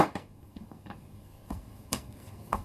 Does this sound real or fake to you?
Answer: fake